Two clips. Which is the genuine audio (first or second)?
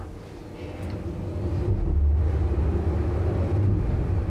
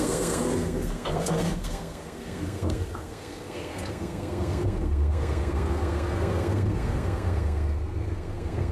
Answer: first